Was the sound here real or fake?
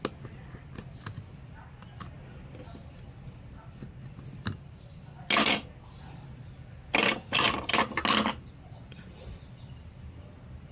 real